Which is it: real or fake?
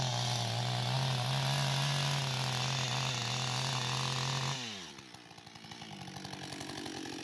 real